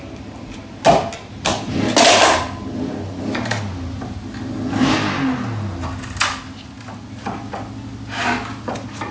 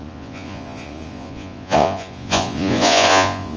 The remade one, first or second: second